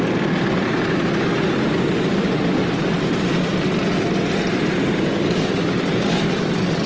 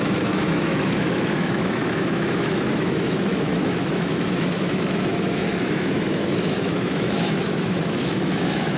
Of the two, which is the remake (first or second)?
second